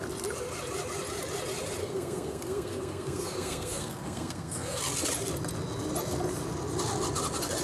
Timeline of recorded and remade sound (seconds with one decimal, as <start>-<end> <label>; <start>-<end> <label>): 0.0-1.8 recorded; 1.8-4.8 remade; 4.8-7.6 recorded

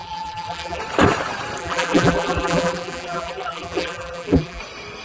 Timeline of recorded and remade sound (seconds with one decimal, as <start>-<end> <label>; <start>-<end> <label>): 0.0-0.8 remade; 0.8-1.6 recorded; 1.6-4.6 remade; 4.6-5.0 recorded

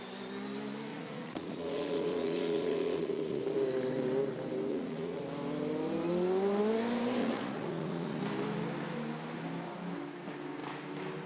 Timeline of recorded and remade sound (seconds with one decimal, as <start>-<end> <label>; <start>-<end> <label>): 0.0-0.9 recorded; 0.9-3.4 remade; 3.4-4.7 recorded; 4.7-5.2 remade; 5.2-7.2 recorded; 7.2-8.2 remade; 8.2-11.3 recorded

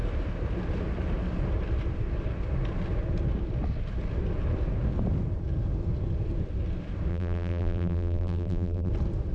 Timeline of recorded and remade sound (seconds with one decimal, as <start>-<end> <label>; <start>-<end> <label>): 0.0-7.1 recorded; 7.1-8.9 remade; 8.9-9.3 recorded

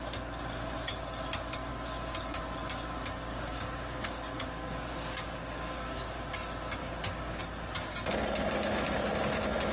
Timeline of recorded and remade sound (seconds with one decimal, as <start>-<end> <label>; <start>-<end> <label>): 0.0-1.7 recorded; 1.7-2.4 remade; 2.4-3.3 recorded; 3.3-6.2 remade; 6.2-6.8 recorded; 6.8-7.4 remade; 7.4-9.7 recorded

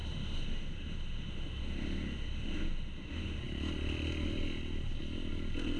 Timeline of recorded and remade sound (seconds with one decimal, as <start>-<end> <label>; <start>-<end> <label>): 0.0-3.4 remade; 3.4-5.8 recorded

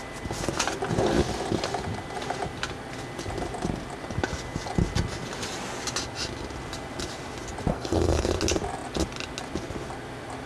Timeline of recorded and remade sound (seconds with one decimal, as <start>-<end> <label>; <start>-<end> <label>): 0.0-7.7 recorded; 7.7-8.3 remade; 8.3-10.5 recorded

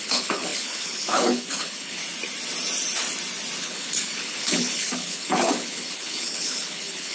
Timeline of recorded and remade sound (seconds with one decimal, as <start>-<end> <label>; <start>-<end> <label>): 0.0-2.0 remade; 2.0-3.6 recorded; 3.6-7.1 remade